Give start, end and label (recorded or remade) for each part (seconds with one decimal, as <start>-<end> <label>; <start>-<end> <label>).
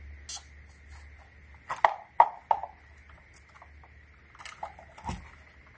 0.0-5.8 recorded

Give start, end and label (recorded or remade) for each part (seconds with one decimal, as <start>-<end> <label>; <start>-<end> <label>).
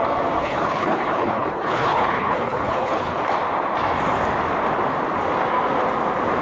0.0-0.4 recorded; 0.4-3.2 remade; 3.2-6.4 recorded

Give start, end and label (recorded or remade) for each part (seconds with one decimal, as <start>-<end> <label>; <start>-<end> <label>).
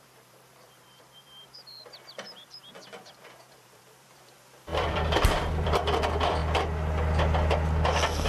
0.0-6.4 remade; 6.4-8.3 recorded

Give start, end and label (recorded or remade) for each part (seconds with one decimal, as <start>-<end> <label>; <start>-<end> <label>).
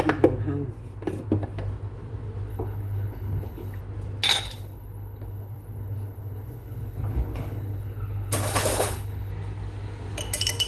0.0-2.5 recorded; 2.5-3.8 remade; 3.8-4.3 recorded; 4.3-9.3 remade; 9.3-10.7 recorded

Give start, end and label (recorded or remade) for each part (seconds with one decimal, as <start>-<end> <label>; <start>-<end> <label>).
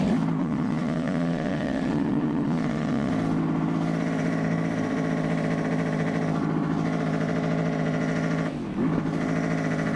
0.0-0.4 recorded; 0.4-3.1 remade; 3.1-10.0 recorded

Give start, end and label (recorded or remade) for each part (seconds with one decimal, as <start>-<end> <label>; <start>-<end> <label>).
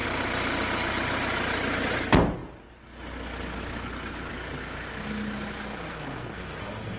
0.0-5.9 recorded; 5.9-7.0 remade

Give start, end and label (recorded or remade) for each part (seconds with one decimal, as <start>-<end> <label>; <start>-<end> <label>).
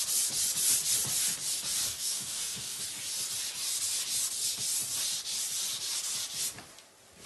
0.0-1.8 recorded; 1.8-2.8 remade; 2.8-7.3 recorded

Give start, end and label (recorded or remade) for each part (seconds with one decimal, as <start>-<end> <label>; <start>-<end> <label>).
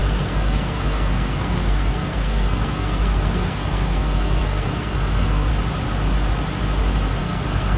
0.0-5.5 remade; 5.5-7.2 recorded; 7.2-7.8 remade